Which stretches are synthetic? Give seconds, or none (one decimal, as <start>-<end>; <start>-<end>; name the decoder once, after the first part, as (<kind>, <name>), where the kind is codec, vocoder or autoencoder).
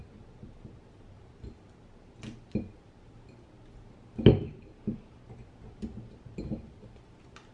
none